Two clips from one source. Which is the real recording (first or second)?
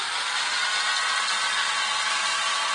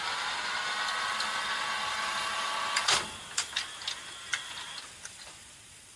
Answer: first